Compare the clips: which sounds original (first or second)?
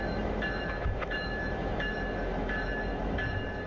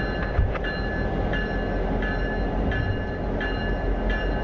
second